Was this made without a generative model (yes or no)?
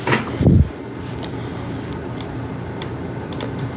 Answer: yes